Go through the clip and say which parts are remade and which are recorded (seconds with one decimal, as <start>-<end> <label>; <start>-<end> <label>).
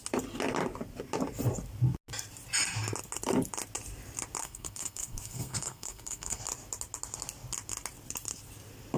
0.0-4.4 recorded; 4.4-6.4 remade; 6.4-9.0 recorded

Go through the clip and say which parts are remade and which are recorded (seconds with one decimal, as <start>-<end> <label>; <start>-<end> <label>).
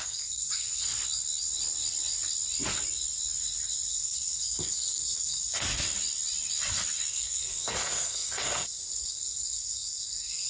0.0-0.9 remade; 0.9-3.9 recorded; 3.9-5.8 remade; 5.8-7.1 recorded; 7.1-10.5 remade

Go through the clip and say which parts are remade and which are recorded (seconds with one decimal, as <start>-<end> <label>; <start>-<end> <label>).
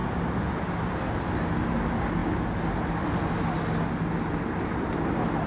0.0-5.5 recorded